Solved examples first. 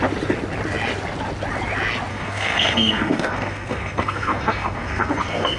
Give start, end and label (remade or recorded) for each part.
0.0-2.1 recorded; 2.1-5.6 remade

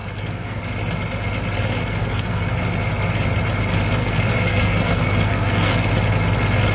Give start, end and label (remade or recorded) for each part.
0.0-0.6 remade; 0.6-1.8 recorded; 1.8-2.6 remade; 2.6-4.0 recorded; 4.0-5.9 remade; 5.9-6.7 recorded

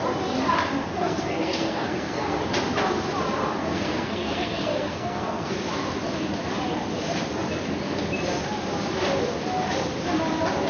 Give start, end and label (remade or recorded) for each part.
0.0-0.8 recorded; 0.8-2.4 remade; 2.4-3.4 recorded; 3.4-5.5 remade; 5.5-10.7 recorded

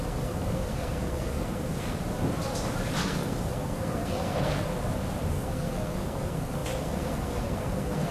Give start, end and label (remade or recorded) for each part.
0.0-2.0 remade; 2.0-3.0 recorded; 3.0-4.7 remade; 4.7-5.3 recorded; 5.3-8.1 remade

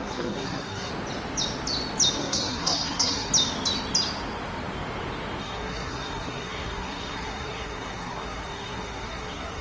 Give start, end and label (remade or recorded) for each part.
0.0-0.9 remade; 0.9-2.2 recorded; 2.2-3.3 remade; 3.3-5.4 recorded; 5.4-9.6 remade